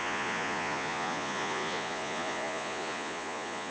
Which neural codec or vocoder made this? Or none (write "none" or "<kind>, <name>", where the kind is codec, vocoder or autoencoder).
vocoder, Vocos